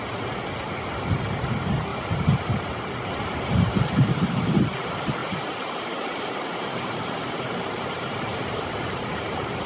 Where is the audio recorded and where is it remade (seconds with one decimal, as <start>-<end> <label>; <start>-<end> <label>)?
0.0-1.9 remade; 1.9-2.5 recorded; 2.5-9.7 remade